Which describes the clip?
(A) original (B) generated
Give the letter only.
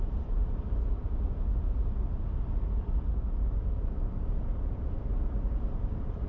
B